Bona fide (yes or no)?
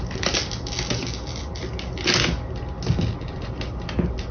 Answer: yes